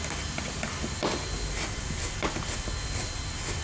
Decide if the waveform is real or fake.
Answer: real